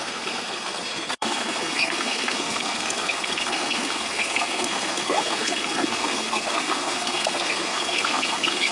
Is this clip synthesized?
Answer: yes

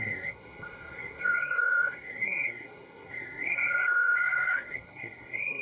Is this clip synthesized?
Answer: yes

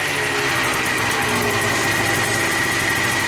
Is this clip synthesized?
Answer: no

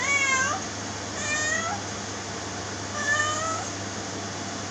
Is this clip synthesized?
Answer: no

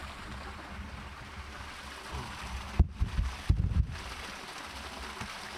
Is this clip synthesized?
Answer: no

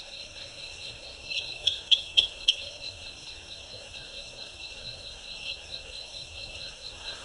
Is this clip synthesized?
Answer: yes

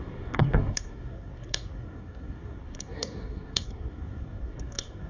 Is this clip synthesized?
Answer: yes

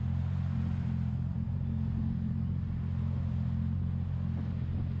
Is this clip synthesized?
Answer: no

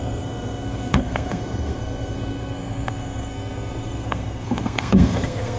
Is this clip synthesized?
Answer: yes